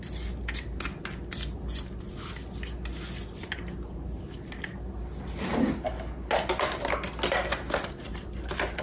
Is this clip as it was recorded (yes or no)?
yes